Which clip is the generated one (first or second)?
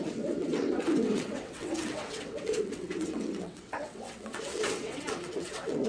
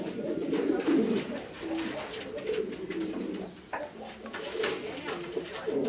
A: first